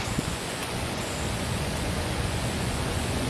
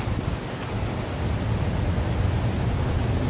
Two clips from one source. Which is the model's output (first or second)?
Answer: first